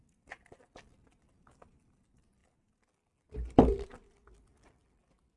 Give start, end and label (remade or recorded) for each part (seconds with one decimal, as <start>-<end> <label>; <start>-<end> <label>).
0.0-5.4 recorded